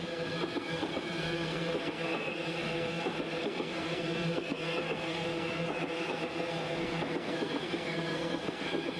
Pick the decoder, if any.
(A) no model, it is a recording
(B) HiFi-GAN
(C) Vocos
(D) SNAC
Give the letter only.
D